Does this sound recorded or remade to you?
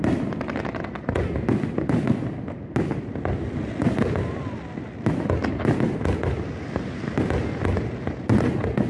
recorded